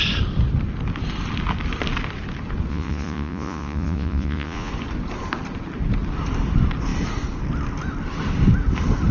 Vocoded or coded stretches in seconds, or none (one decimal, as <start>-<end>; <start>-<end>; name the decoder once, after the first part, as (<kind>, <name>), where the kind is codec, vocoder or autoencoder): 2.7-4.7 (vocoder, Vocos)

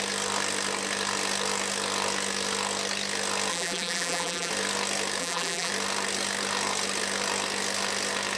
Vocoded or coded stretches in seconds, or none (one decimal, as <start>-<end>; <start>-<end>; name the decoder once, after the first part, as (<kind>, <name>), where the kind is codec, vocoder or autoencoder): 3.5-4.5 (vocoder, BigVGAN v2); 5.2-5.7

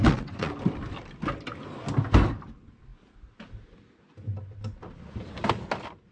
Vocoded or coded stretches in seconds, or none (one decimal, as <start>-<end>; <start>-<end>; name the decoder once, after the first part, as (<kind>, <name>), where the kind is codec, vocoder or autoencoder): 0.0-0.5 (vocoder, WaveNeXt)

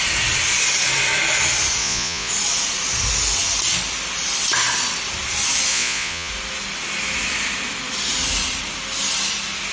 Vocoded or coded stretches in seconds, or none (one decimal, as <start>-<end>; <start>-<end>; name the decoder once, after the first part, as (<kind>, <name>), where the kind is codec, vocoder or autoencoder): 1.8-2.3 (vocoder, Vocos); 5.7-6.3